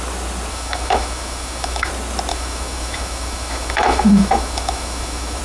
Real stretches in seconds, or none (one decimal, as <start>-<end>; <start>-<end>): 0.0-0.5; 1.9-2.3